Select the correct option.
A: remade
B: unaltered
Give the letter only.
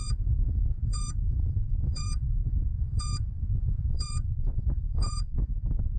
A